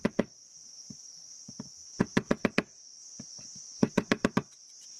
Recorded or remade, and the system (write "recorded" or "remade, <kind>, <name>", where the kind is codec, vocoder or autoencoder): recorded